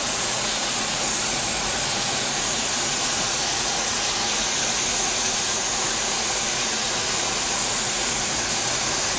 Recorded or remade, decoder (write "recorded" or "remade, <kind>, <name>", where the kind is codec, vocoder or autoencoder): remade, vocoder, Vocos